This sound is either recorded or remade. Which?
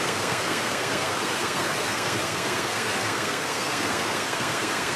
remade